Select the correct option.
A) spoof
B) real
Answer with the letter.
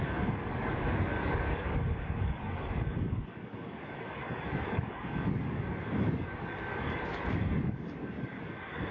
A